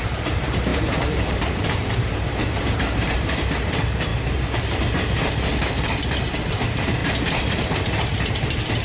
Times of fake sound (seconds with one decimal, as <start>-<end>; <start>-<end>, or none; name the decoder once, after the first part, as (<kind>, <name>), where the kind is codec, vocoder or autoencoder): 0.0-4.1 (vocoder, BigVGAN v2); 5.6-7.0; 7.5-8.8